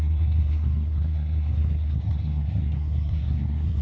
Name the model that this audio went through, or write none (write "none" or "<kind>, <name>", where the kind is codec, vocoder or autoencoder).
codec, SNAC